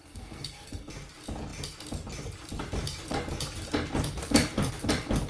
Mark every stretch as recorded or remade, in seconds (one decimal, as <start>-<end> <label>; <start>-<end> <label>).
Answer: 0.0-0.9 remade; 0.9-5.3 recorded